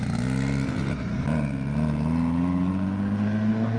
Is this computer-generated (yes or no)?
no